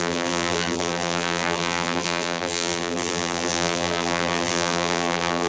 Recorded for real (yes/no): no